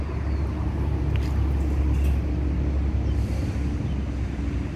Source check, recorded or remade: recorded